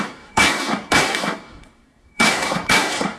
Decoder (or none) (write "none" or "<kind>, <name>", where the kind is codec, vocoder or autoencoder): codec, SNAC